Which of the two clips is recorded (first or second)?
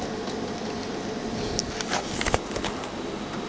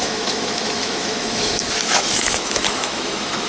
first